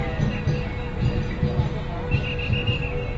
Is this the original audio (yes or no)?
yes